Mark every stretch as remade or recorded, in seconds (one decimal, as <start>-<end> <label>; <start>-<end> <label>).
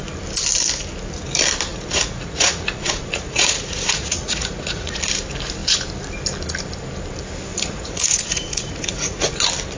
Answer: 0.0-1.7 recorded; 1.7-5.0 remade; 5.0-7.5 recorded; 7.5-9.4 remade; 9.4-9.8 recorded